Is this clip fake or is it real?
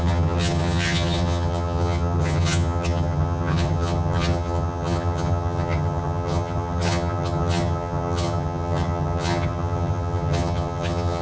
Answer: fake